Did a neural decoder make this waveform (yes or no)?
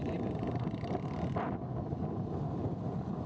no